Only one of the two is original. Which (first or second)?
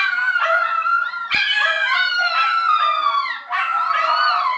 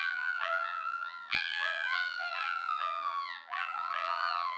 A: first